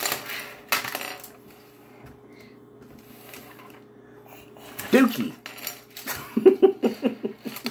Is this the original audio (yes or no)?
yes